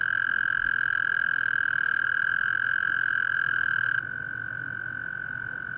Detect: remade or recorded recorded